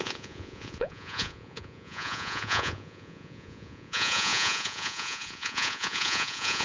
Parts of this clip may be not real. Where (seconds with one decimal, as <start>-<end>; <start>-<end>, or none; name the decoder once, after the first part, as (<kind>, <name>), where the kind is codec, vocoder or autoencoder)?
0.0-6.6 (vocoder, Vocos)